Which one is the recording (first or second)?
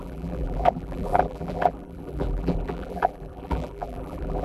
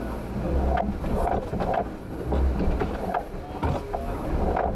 second